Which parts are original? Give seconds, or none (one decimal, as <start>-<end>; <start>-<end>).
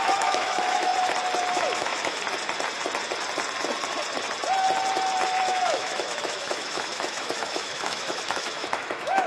0.9-1.5; 2.2-5.3